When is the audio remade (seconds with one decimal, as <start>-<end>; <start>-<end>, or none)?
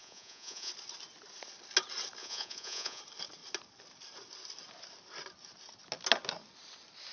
0.0-0.7; 2.2-3.0